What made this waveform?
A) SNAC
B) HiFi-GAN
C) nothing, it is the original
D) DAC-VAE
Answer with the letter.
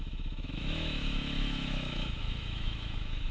D